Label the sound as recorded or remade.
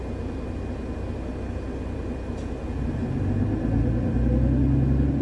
recorded